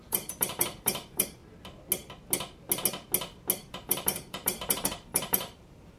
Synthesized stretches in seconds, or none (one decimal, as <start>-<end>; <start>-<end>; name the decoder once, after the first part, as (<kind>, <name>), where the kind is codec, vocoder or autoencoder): 0.0-1.4 (vocoder, BigVGAN v2); 3.7-6.0